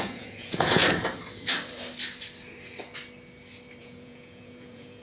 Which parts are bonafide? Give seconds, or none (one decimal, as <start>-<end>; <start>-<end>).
0.8-3.8